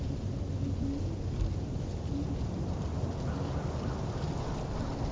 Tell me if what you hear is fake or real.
real